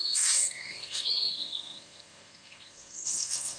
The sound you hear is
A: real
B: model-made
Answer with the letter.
B